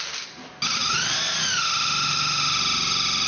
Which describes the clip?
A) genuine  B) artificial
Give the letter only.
A